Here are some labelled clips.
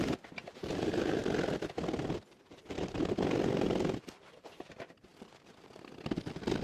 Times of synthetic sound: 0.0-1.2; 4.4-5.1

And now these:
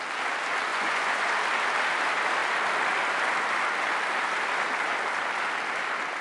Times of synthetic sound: 0.7-1.3

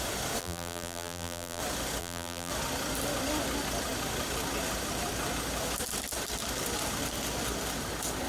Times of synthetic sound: 0.4-1.6; 2.0-2.5

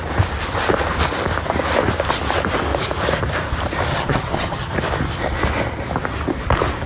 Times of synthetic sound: 3.9-4.7

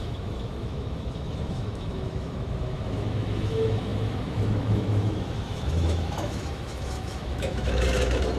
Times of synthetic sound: 0.0-8.4

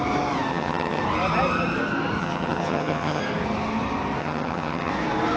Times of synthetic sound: 0.5-1.0; 2.2-3.2; 4.2-4.9

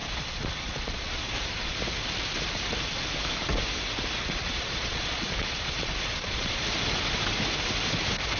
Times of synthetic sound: 0.0-1.8; 4.2-6.6

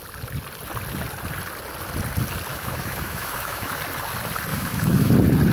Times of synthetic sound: 2.5-3.8; 4.5-5.1